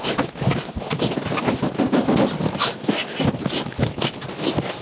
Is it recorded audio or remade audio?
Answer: recorded